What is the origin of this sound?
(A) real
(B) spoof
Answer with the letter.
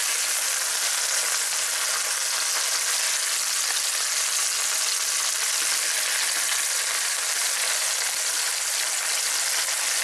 A